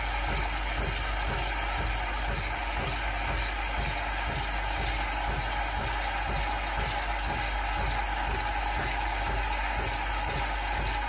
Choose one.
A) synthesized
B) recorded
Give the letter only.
B